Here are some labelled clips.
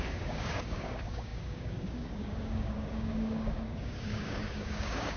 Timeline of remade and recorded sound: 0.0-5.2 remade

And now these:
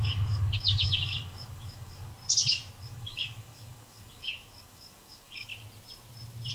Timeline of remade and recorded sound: 0.0-2.1 remade; 2.1-2.8 recorded; 2.8-5.5 remade; 5.5-6.5 recorded

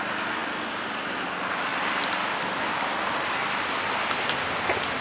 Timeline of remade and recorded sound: 0.0-5.0 recorded

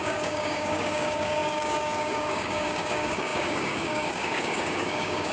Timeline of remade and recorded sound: 0.0-5.3 remade